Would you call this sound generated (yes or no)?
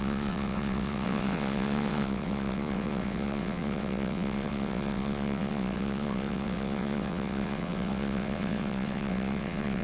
yes